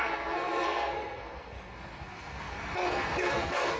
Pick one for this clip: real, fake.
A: fake